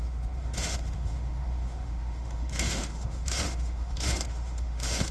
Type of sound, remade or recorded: remade